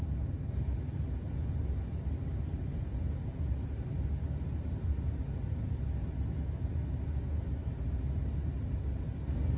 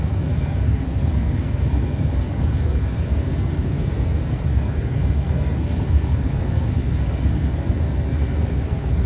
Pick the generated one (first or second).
second